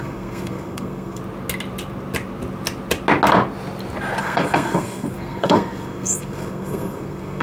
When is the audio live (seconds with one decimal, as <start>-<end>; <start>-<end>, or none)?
1.2-4.2